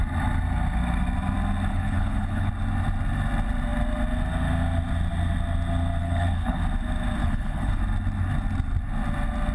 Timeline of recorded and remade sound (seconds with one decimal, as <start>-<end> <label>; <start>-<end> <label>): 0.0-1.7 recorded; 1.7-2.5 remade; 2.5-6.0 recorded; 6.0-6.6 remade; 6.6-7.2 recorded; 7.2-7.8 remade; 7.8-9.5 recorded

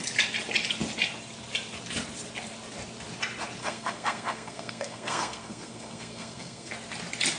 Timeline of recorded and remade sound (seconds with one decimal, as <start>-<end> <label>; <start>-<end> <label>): 0.0-3.6 recorded; 3.6-6.7 remade; 6.7-7.4 recorded

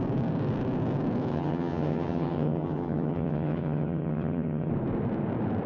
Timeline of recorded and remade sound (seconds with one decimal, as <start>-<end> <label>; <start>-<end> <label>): 0.0-1.3 recorded; 1.3-4.7 remade; 4.7-5.7 recorded

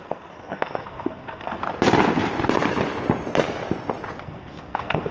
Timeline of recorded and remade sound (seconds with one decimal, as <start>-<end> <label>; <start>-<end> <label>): 0.0-1.6 remade; 1.6-4.2 recorded; 4.2-5.1 remade

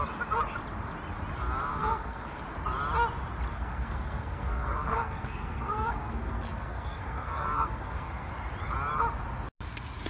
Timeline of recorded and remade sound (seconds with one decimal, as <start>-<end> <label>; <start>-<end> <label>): 0.0-1.7 recorded; 1.7-2.4 remade; 2.4-3.5 recorded; 3.5-8.3 remade; 8.3-10.1 recorded

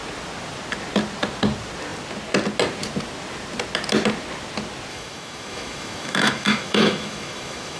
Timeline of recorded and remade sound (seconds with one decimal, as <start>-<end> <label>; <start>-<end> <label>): 0.0-4.9 recorded; 4.9-7.8 remade

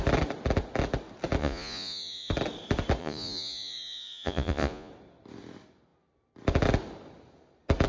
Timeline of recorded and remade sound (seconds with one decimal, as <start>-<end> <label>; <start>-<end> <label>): 0.0-1.4 recorded; 1.4-2.3 remade; 2.3-3.0 recorded; 3.0-4.9 remade; 4.9-7.9 recorded

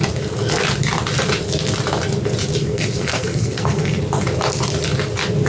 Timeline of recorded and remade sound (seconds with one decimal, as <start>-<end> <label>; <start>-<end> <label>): 0.0-2.6 recorded; 2.6-4.0 remade; 4.0-5.5 recorded